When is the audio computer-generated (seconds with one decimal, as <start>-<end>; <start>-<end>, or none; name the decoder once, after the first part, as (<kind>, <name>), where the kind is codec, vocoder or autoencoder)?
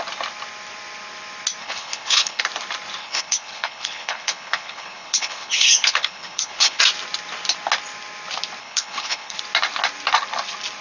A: 1.6-2.4 (codec, HILCodec); 3.0-6.8; 8.6-9.4